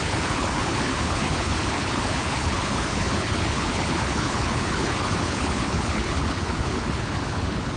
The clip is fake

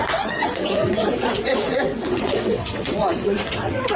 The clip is fake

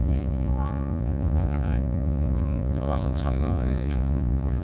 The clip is fake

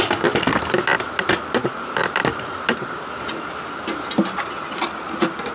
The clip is real